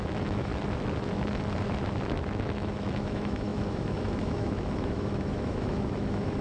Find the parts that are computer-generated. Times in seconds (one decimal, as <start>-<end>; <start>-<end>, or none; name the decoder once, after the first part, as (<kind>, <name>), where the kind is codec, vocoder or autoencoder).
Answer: 0.0-0.5 (autoencoder, DAC-VAE); 2.2-6.4

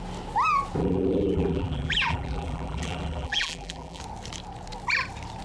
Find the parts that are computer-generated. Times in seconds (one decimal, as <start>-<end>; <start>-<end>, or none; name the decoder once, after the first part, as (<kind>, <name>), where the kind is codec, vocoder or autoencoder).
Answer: 0.8-4.0 (vocoder, BigVGAN v2)